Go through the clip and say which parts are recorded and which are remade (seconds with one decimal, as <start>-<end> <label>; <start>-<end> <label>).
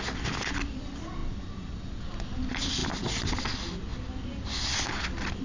0.0-5.4 recorded